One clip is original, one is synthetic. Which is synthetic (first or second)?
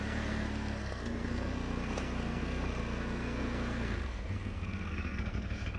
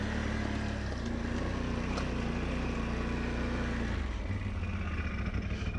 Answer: first